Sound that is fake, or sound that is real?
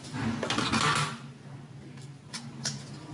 real